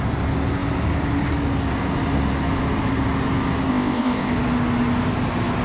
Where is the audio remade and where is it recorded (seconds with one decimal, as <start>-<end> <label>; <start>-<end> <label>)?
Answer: 0.0-3.7 recorded; 3.7-4.3 remade; 4.3-5.6 recorded